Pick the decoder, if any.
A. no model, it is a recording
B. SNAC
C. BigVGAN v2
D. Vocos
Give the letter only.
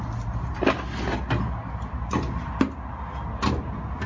A